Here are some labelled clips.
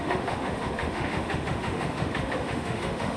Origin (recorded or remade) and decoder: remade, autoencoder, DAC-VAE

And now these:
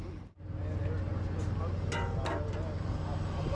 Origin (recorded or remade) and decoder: recorded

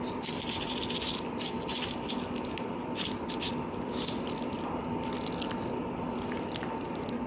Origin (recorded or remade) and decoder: recorded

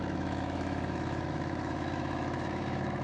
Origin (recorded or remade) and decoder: remade, autoencoder, DAC-VAE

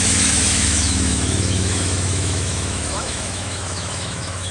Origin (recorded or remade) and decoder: remade, autoencoder, DAC-VAE